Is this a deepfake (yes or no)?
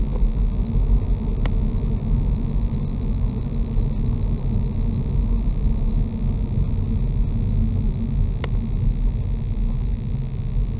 no